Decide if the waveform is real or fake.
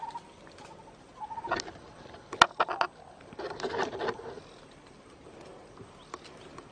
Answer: real